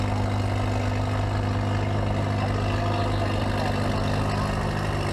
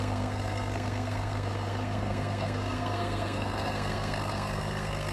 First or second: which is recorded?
first